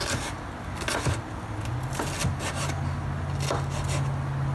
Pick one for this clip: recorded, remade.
recorded